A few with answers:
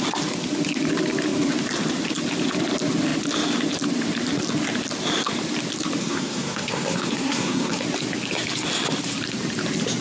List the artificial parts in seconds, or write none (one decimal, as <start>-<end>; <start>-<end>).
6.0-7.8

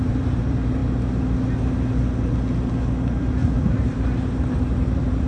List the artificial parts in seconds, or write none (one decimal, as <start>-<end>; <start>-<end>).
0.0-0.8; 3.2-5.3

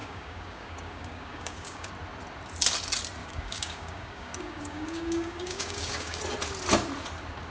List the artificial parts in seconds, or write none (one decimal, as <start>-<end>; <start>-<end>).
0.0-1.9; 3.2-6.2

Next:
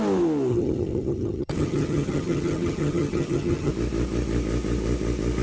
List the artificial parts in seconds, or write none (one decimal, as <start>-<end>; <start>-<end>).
0.5-3.7

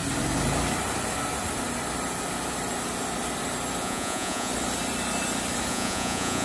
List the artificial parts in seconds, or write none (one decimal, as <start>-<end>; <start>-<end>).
3.8-4.5; 5.7-6.4

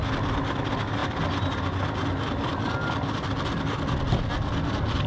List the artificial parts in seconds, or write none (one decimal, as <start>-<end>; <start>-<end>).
none

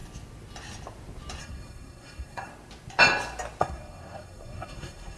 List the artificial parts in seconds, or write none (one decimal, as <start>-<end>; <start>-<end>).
1.4-2.5; 3.6-5.2

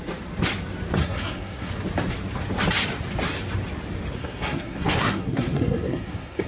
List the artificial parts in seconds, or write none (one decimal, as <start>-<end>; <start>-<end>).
1.0-1.7; 4.2-6.5